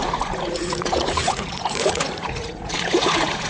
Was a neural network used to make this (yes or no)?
yes